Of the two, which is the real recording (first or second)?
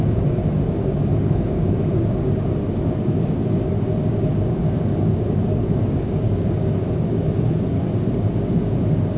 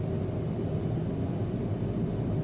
second